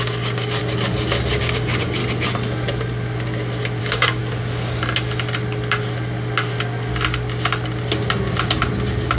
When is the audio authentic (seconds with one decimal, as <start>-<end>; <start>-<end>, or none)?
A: 0.6-1.4; 2.0-3.8; 4.2-9.2